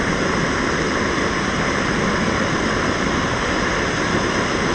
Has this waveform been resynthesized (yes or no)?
no